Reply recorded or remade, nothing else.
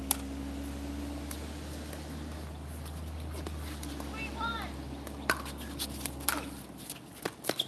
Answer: recorded